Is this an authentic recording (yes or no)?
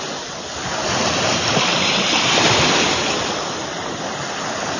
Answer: no